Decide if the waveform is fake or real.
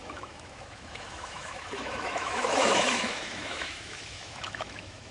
fake